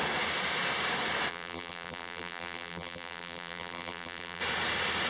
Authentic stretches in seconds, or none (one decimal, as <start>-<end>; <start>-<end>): 0.0-1.3; 4.4-5.1